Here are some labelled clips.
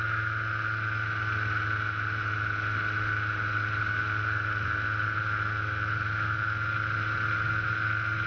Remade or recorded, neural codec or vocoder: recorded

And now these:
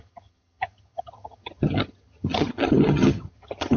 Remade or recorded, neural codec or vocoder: remade, vocoder, HiFi-GAN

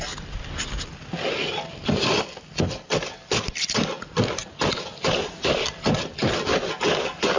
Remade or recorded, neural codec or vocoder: recorded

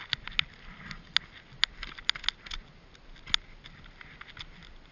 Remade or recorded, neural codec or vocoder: recorded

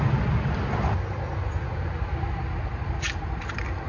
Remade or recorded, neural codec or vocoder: recorded